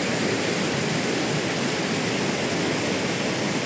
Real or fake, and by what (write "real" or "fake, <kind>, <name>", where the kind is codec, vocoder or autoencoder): real